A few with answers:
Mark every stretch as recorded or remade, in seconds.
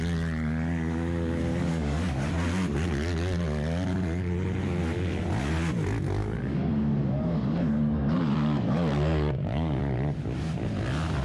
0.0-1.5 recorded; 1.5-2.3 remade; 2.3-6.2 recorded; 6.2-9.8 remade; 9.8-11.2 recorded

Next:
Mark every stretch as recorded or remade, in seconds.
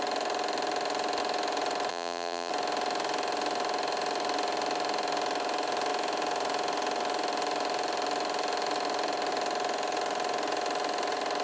0.0-1.9 recorded; 1.9-2.5 remade; 2.5-11.4 recorded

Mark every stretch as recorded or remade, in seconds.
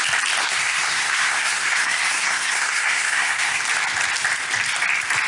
0.0-0.4 recorded; 0.4-3.6 remade; 3.6-5.3 recorded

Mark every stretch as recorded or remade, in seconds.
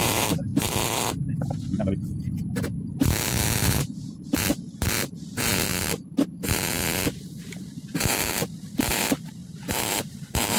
0.0-0.5 remade; 0.5-2.2 recorded; 2.2-9.4 remade; 9.4-9.9 recorded; 9.9-10.6 remade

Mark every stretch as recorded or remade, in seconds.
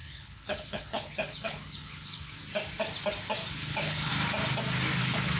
0.0-2.4 remade; 2.4-3.5 recorded; 3.5-4.1 remade; 4.1-5.0 recorded; 5.0-5.4 remade